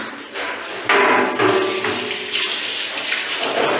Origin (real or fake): real